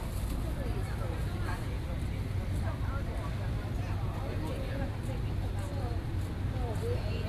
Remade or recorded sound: recorded